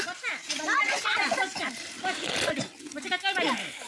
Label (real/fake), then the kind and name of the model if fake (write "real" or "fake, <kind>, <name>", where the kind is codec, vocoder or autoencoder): real